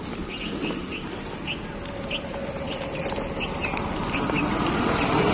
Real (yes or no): yes